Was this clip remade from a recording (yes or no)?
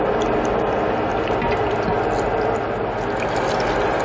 no